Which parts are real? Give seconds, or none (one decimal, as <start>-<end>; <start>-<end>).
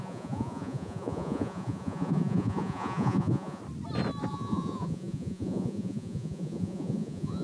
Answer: 3.6-4.3